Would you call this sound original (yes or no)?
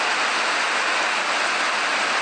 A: yes